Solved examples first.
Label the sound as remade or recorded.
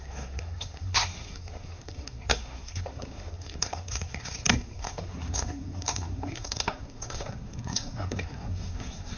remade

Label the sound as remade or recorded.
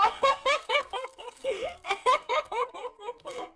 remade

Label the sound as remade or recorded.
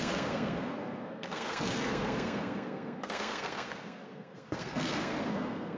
remade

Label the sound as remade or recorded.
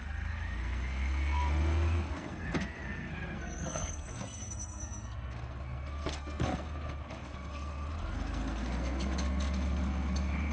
remade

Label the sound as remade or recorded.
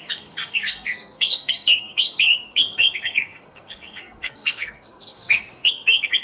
remade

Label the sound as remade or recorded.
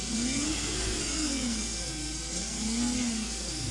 remade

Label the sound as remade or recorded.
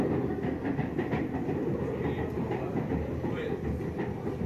recorded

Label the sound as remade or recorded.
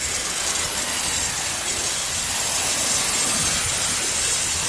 recorded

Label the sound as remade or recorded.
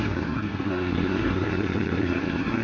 remade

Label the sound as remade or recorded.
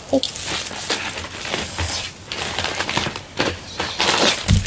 recorded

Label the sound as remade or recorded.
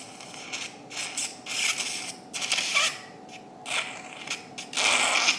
recorded